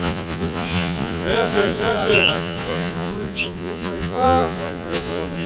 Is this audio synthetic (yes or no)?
yes